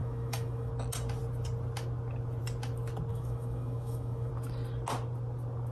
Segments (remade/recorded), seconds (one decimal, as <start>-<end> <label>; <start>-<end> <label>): 0.0-0.7 remade; 0.7-3.1 recorded; 3.1-4.3 remade; 4.3-5.7 recorded